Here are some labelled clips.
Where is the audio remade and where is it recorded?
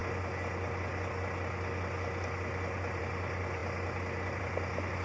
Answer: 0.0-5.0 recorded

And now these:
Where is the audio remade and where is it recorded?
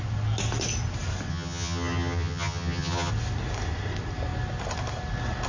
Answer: 0.0-1.3 recorded; 1.3-3.1 remade; 3.1-5.5 recorded